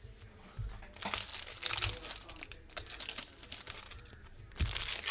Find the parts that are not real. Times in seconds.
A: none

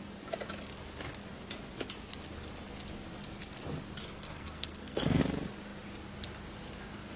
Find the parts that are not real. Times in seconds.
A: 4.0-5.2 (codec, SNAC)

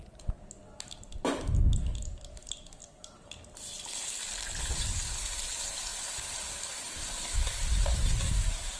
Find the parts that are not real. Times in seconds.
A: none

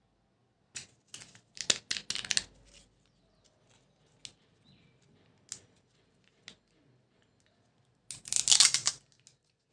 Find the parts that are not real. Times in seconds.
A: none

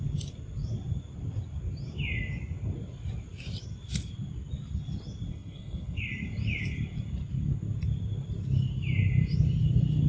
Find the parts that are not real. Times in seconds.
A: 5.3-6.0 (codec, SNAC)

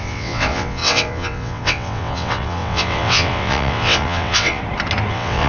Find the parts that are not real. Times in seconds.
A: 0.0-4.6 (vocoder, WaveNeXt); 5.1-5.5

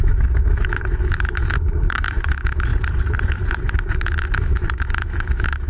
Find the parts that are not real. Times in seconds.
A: 0.0-2.7 (autoencoder, DAC-VAE); 3.5-5.7

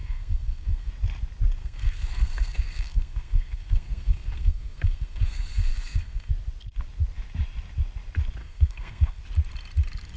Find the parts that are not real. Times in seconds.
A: 0.0-0.9 (codec, SNAC); 1.6-6.3; 8.4-9.2